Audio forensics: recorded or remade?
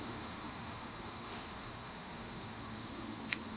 remade